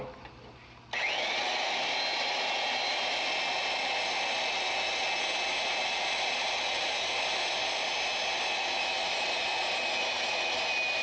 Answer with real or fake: real